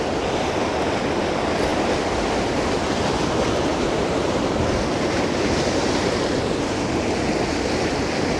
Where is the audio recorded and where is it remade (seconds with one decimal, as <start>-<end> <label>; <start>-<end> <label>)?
0.0-3.7 recorded; 3.7-4.4 remade; 4.4-8.4 recorded